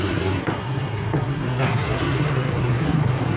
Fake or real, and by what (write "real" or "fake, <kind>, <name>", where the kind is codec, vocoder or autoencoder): fake, codec, SNAC